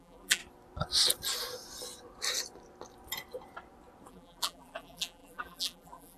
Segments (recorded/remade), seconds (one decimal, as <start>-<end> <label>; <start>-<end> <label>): 0.0-0.4 remade; 0.4-4.1 recorded; 4.1-6.2 remade